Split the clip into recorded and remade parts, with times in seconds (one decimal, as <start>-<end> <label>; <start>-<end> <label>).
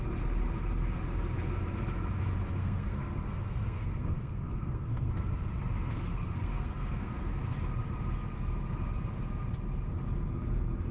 0.0-2.6 recorded; 2.6-5.1 remade; 5.1-6.1 recorded; 6.1-7.3 remade; 7.3-10.9 recorded